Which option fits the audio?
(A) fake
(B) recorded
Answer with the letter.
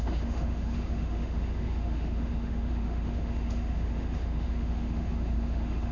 A